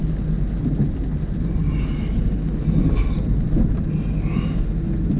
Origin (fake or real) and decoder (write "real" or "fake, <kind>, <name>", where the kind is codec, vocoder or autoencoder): real